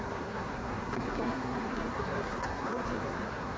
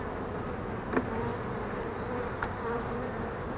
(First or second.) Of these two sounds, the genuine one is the second